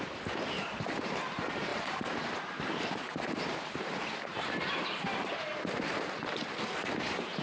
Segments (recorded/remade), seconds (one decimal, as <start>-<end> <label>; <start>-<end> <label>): 0.0-1.7 recorded; 1.7-5.3 remade; 5.3-7.4 recorded